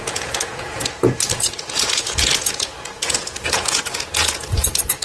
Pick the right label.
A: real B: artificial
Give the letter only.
B